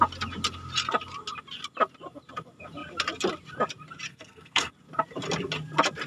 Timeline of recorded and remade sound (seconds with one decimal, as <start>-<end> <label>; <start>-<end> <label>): 0.0-4.1 recorded; 4.1-4.7 remade; 4.7-6.1 recorded